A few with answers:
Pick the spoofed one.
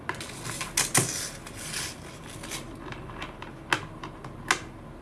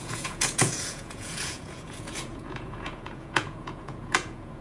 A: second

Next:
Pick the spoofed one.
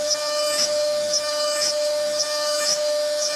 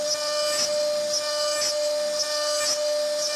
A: first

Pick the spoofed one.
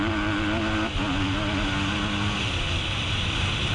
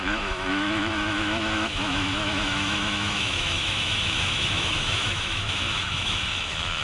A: second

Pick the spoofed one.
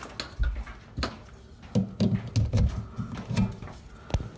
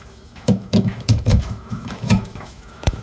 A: second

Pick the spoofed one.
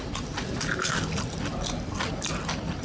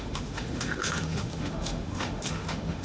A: second